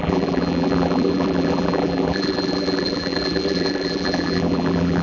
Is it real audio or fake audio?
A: fake